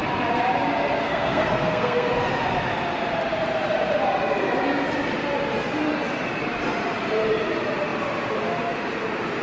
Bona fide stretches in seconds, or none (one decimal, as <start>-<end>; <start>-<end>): 0.0-1.0; 2.1-9.4